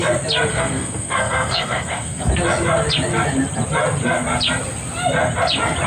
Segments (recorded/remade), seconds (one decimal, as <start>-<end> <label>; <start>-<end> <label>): 0.0-0.5 recorded; 0.5-2.3 remade; 2.3-5.9 recorded